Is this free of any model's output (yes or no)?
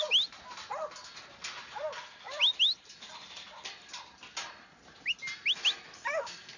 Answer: yes